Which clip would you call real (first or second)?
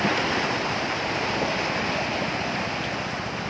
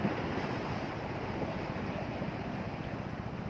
first